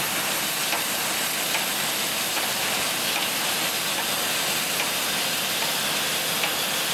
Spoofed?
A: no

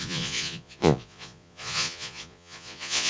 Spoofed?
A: yes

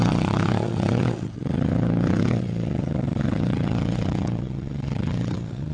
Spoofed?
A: yes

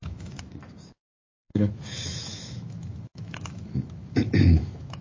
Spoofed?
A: yes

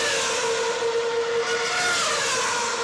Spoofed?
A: no